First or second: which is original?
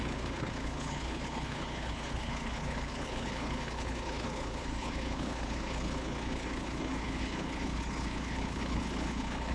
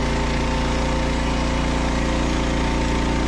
second